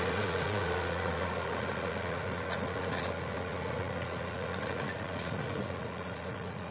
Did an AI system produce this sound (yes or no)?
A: yes